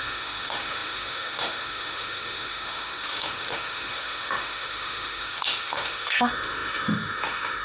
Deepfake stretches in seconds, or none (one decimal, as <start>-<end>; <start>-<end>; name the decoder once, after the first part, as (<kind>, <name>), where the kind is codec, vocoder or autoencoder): 0.0-7.6 (autoencoder, DAC-VAE)